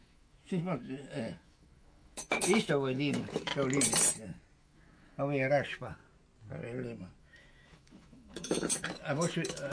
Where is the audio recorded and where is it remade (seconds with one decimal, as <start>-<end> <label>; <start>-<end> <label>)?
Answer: 0.0-3.5 remade; 3.5-4.6 recorded; 4.6-6.0 remade; 6.0-7.2 recorded; 7.2-9.7 remade